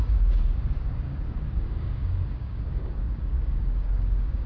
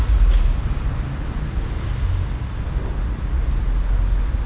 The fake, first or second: first